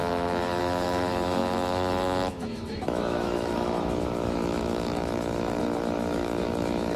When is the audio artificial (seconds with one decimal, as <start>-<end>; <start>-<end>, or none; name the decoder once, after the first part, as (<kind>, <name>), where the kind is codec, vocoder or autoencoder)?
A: 0.0-7.0 (autoencoder, DAC-VAE)